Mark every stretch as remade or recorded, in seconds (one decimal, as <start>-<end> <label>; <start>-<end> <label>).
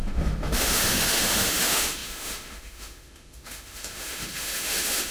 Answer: 0.0-5.1 remade